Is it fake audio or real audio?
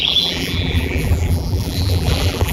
fake